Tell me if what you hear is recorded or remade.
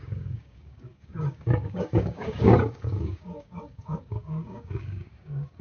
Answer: remade